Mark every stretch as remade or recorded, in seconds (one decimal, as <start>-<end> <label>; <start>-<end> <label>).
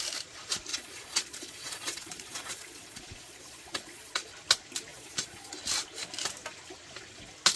0.0-0.7 recorded; 0.7-4.3 remade; 4.3-4.9 recorded; 4.9-5.5 remade; 5.5-7.6 recorded